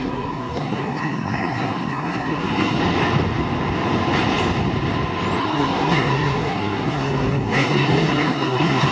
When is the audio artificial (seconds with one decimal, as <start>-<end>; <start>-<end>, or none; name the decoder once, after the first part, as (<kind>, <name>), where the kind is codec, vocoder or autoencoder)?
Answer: 0.0-2.8 (codec, SNAC); 5.4-8.9